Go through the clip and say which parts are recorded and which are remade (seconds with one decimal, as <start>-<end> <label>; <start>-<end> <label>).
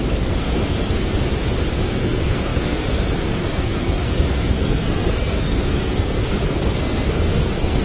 0.0-1.3 remade; 1.3-1.9 recorded; 1.9-7.8 remade